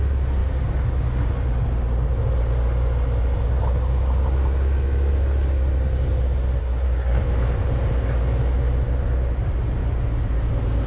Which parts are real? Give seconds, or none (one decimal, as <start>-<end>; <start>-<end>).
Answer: 0.0-6.6; 7.2-10.9